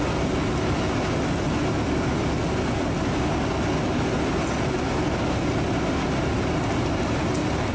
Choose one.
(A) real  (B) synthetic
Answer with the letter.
A